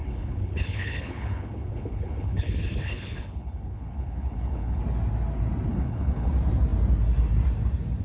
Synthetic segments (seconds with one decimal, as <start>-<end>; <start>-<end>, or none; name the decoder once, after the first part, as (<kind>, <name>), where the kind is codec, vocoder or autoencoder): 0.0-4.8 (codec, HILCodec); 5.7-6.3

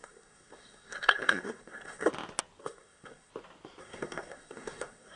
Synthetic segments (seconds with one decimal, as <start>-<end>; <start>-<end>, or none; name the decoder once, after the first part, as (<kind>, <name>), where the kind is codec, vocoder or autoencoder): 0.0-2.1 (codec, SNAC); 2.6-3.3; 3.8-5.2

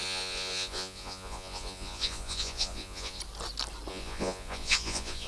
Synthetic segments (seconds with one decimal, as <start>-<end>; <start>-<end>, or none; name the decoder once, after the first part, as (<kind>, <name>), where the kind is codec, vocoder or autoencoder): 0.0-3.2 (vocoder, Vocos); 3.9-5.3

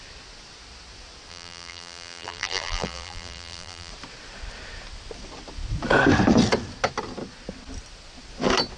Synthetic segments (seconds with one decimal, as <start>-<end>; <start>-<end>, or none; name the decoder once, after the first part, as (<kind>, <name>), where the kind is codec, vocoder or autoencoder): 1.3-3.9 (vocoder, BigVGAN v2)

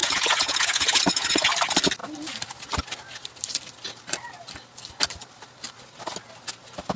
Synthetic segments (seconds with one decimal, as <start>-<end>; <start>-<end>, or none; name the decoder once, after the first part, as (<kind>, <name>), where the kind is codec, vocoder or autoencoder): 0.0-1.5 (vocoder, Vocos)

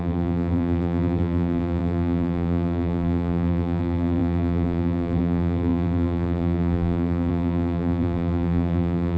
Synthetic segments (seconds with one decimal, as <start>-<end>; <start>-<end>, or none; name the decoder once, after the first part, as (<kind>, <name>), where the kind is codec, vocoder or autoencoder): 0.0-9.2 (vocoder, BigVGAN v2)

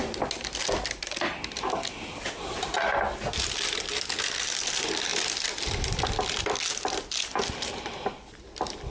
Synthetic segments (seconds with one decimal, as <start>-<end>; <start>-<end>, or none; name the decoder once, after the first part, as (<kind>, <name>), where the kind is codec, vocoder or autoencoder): none

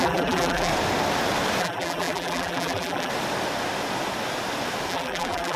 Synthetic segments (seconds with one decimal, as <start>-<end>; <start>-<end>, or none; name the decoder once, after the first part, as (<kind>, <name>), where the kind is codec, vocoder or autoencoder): 0.0-0.7 (vocoder, BigVGAN v2); 1.6-3.1; 4.9-5.6